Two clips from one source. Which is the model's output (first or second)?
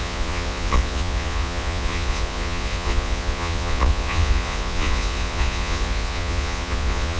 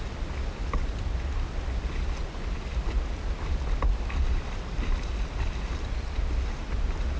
first